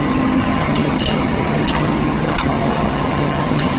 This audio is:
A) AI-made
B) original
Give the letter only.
A